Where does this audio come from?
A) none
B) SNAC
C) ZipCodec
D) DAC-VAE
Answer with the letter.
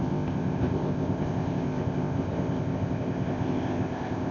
C